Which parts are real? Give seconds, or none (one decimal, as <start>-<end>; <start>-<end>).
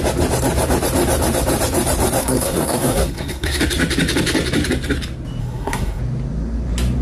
0.0-2.2; 3.6-5.4; 6.0-7.0